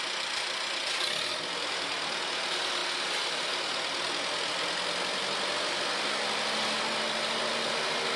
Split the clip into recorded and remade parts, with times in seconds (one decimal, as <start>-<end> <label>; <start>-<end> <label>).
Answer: 0.0-8.2 recorded